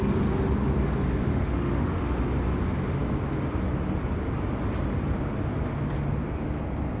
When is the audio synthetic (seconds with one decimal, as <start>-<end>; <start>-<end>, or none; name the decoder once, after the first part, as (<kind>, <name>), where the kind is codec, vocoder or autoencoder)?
1.3-2.2 (autoencoder, DAC-VAE)